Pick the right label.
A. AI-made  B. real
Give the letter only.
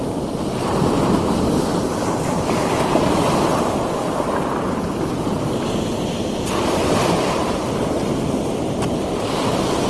A